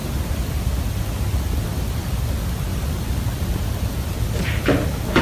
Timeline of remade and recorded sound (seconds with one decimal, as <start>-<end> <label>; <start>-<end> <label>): 0.0-0.7 remade; 0.7-2.7 recorded; 2.7-3.9 remade; 3.9-5.2 recorded